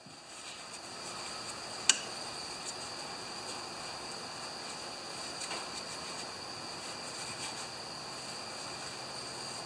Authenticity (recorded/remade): recorded